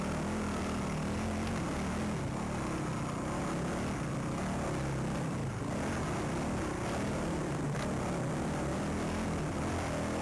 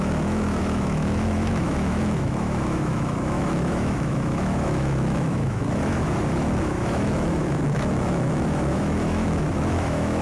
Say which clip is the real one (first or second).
first